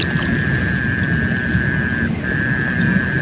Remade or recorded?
recorded